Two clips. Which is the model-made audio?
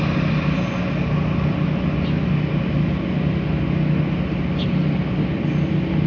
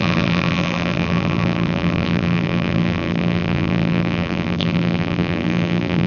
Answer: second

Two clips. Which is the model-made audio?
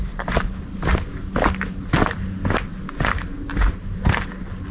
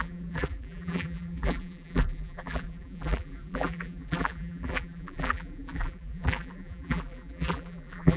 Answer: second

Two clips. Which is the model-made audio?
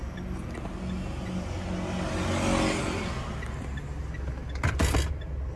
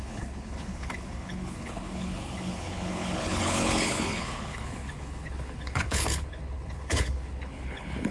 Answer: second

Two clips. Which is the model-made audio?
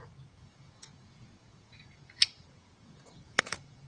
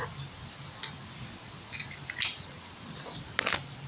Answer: first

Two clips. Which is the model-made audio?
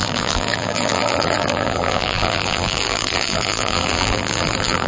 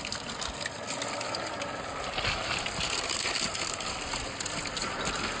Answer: first